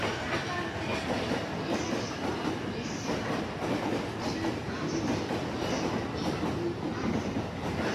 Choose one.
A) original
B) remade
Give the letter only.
A